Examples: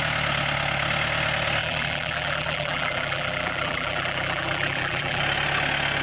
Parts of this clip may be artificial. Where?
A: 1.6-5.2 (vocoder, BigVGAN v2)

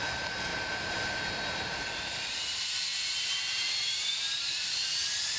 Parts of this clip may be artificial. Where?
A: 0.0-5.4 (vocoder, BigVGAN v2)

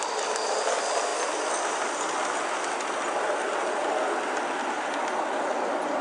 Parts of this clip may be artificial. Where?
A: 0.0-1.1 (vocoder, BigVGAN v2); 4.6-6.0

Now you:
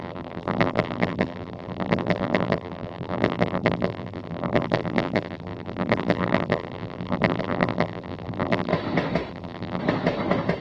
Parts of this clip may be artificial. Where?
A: 0.0-8.7 (vocoder, BigVGAN v2); 9.3-9.8